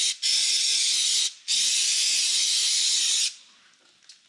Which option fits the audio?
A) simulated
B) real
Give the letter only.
B